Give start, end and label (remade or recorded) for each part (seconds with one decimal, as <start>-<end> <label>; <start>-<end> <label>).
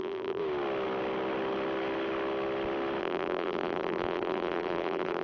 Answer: 0.0-0.4 remade; 0.4-3.0 recorded; 3.0-5.2 remade